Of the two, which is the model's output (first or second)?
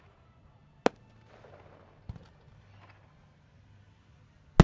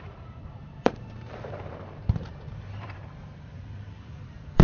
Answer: second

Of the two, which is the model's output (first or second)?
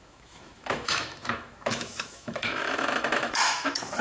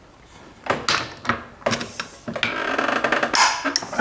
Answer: first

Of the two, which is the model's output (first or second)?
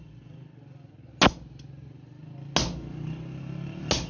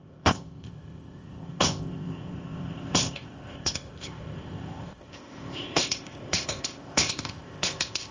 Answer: second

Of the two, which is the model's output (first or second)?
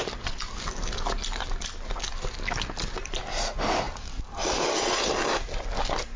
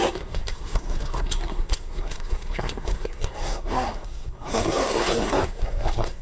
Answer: second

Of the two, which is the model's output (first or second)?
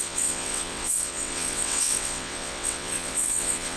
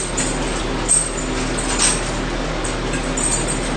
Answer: first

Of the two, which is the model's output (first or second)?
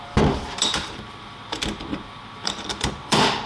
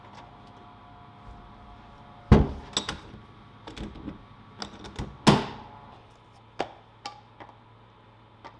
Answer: first